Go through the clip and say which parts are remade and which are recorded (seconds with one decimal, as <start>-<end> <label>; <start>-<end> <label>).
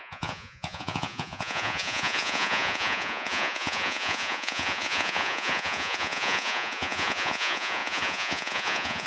0.0-9.1 remade